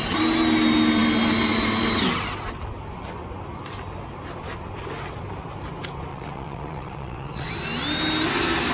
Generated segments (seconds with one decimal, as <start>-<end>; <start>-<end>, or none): 6.1-7.5